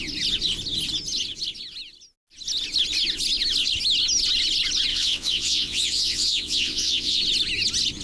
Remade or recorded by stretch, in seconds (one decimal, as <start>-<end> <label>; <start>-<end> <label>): 0.0-4.9 recorded; 4.9-7.2 remade; 7.2-8.0 recorded